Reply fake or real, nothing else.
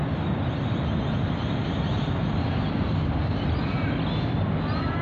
real